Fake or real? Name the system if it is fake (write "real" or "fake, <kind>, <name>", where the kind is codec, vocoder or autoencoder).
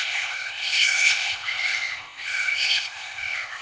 fake, codec, ZipCodec